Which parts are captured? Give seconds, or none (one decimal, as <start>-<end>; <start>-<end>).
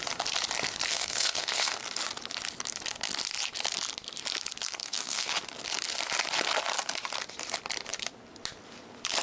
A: 0.0-0.9; 1.8-4.8; 5.3-9.2